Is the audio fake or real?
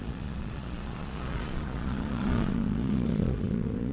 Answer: fake